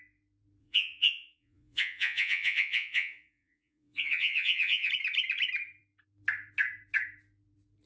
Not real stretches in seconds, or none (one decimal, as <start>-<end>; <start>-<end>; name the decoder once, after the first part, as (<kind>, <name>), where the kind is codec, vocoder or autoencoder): 0.6-4.9 (vocoder, Vocos)